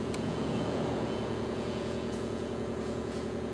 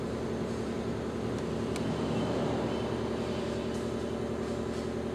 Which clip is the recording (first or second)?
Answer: second